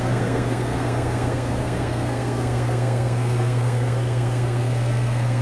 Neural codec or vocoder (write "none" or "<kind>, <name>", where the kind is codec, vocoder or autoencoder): codec, SNAC